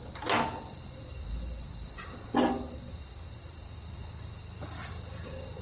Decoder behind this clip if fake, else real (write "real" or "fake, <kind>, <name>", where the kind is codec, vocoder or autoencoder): real